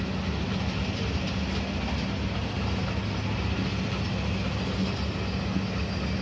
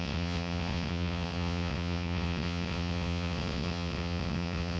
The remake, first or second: second